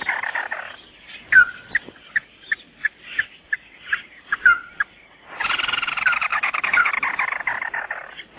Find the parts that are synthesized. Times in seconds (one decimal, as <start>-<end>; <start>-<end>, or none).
6.3-6.9